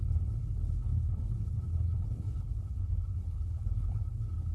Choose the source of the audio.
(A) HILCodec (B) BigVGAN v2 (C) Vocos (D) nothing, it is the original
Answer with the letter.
A